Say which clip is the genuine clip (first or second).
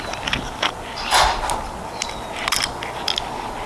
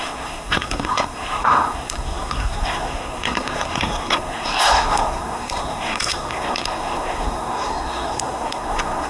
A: first